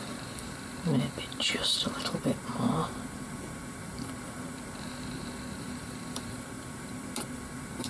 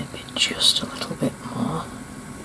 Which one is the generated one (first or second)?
first